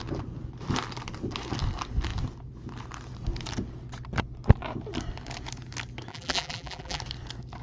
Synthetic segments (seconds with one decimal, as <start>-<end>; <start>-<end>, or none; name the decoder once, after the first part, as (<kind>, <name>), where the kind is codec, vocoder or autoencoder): 6.1-7.0 (vocoder, BigVGAN v2)